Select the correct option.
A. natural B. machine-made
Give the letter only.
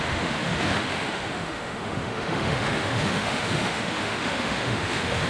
B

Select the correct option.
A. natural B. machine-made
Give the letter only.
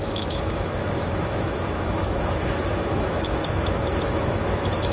B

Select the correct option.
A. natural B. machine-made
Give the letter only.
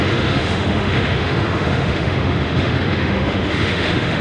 B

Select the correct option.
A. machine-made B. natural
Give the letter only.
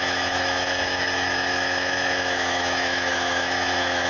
A